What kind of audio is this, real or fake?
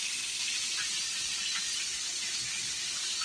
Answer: real